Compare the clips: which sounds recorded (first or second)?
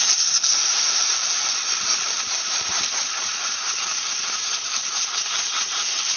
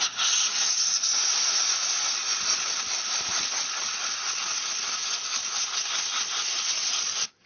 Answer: second